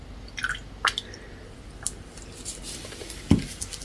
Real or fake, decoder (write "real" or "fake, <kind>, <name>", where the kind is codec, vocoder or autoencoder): real